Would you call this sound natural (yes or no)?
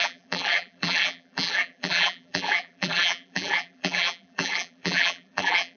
no